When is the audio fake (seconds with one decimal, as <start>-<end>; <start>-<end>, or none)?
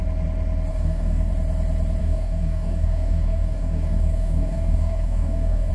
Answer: 0.7-1.3; 2.0-5.7